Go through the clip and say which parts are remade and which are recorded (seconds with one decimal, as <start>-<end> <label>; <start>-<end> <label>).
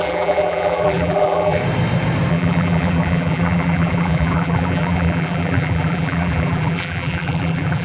0.0-1.6 remade; 1.6-2.3 recorded; 2.3-7.8 remade